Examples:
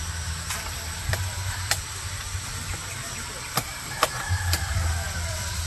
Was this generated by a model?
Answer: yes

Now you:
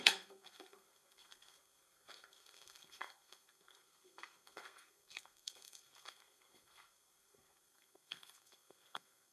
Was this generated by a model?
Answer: yes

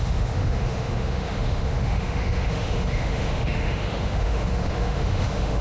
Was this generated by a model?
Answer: yes